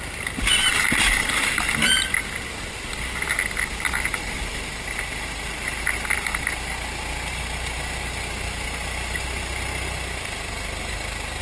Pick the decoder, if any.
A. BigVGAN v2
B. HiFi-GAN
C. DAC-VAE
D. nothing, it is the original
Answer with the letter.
D